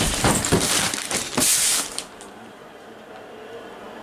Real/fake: real